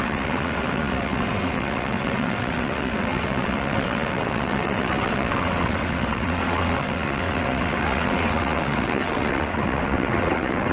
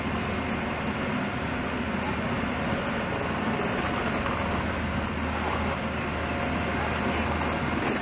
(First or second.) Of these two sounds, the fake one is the first